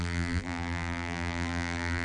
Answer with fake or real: fake